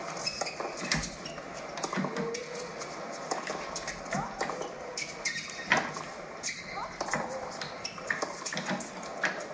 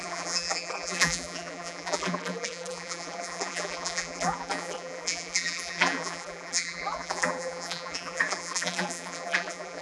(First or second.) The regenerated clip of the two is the second